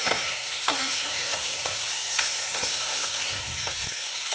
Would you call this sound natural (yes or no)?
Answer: no